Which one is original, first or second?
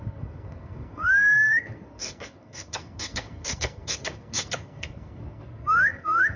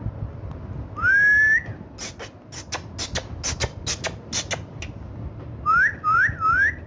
second